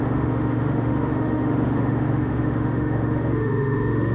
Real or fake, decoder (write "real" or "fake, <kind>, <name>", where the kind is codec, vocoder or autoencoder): fake, autoencoder, DAC-VAE